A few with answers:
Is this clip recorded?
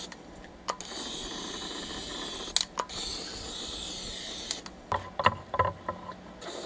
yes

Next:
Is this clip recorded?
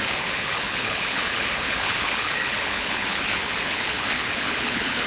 no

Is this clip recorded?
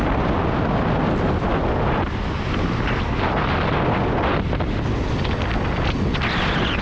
yes